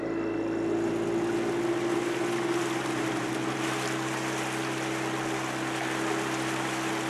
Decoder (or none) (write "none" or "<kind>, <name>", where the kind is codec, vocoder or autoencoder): none